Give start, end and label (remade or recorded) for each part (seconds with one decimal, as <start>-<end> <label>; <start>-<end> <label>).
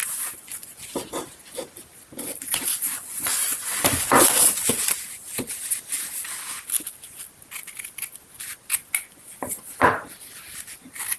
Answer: 0.0-0.8 remade; 0.8-2.7 recorded; 2.7-4.7 remade; 4.7-8.8 recorded; 8.8-9.4 remade; 9.4-11.2 recorded